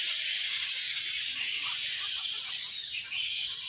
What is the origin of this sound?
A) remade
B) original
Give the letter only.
A